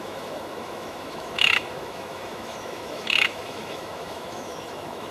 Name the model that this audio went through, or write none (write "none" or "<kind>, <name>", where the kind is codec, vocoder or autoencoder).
autoencoder, DAC-VAE